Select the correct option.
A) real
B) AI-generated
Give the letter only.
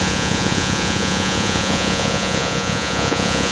B